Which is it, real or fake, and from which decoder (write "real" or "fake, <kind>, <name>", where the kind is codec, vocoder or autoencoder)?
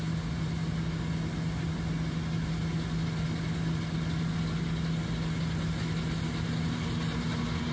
real